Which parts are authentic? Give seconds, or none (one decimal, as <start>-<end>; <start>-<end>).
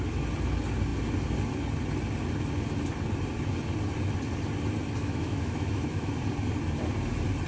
0.0-5.0; 6.1-7.5